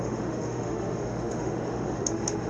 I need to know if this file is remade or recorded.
remade